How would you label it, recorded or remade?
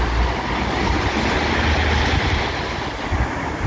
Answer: recorded